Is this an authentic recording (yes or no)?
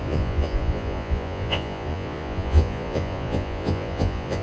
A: no